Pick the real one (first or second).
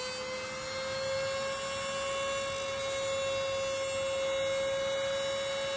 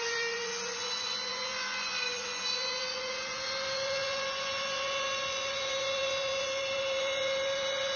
first